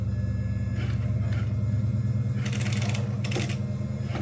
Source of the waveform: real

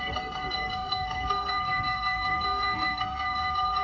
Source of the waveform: fake